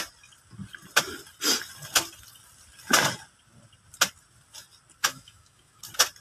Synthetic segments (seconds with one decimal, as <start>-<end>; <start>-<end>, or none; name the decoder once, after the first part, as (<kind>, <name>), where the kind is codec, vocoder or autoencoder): 5.0-5.8 (autoencoder, DAC-VAE)